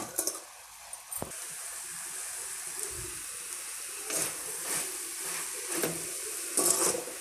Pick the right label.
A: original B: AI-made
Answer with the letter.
A